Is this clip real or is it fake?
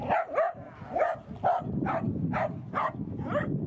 real